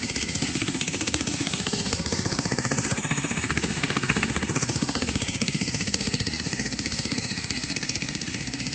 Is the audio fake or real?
fake